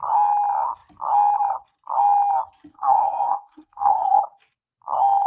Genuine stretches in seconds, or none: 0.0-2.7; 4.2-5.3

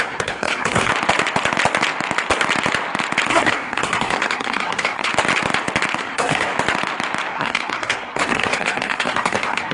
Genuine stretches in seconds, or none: 0.9-3.3; 5.1-6.0; 6.5-7.3

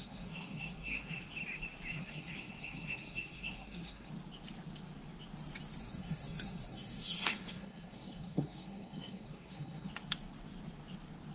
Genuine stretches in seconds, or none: 1.2-1.9; 4.1-5.8; 9.9-11.3